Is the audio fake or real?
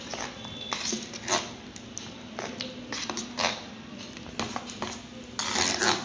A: real